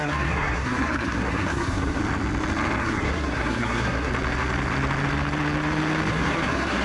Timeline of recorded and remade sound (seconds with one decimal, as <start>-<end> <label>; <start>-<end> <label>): 0.0-2.0 remade; 2.0-2.8 recorded; 2.8-4.1 remade; 4.1-6.1 recorded; 6.1-6.8 remade